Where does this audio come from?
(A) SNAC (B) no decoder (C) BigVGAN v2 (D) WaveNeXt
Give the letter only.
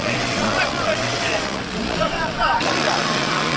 D